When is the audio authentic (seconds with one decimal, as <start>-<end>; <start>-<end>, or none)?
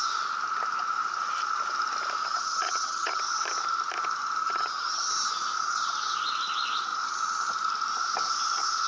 0.0-2.2; 3.2-4.4; 5.1-8.9